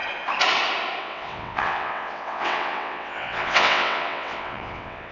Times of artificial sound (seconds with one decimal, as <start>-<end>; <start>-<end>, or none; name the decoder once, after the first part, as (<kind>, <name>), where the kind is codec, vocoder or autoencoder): 1.0-5.1 (vocoder, WaveNeXt)